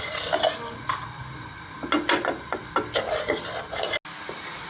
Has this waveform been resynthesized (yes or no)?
no